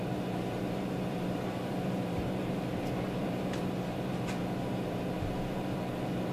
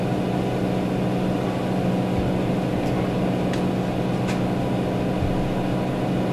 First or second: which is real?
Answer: second